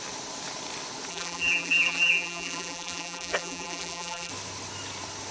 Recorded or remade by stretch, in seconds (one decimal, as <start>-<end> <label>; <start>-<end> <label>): 0.0-1.1 recorded; 1.1-4.3 remade; 4.3-5.3 recorded